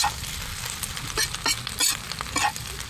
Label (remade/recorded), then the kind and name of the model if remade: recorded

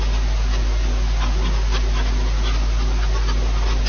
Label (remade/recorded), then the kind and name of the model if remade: recorded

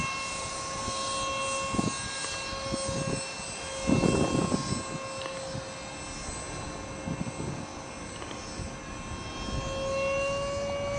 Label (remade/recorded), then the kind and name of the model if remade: recorded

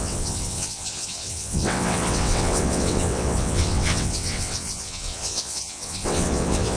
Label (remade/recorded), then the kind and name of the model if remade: remade, vocoder, WaveNeXt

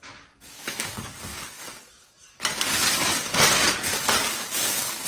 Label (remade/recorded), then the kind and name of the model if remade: remade, codec, DAC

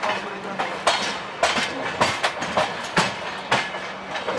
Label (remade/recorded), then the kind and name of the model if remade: recorded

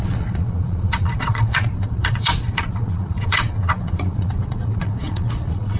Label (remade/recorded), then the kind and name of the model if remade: remade, vocoder, Vocos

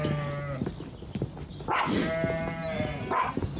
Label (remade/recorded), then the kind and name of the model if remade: recorded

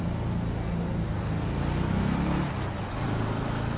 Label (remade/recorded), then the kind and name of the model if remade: recorded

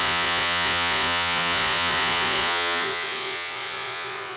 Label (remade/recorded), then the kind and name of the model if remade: remade, vocoder, Vocos